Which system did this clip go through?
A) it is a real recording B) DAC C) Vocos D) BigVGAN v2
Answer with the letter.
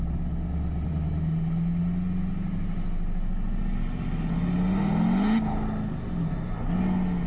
A